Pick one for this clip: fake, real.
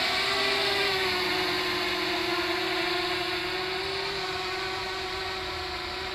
real